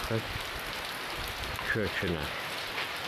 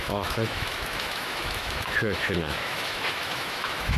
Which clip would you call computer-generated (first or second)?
second